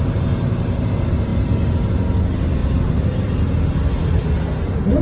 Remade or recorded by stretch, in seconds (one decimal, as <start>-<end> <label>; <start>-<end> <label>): 0.0-1.3 recorded; 1.3-1.9 remade; 1.9-2.6 recorded; 2.6-3.2 remade; 3.2-5.0 recorded